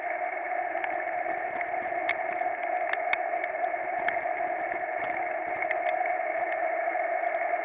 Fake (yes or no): yes